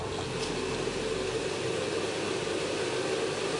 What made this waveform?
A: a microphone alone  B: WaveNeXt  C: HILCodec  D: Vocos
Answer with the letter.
A